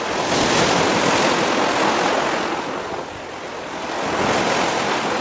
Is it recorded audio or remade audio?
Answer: recorded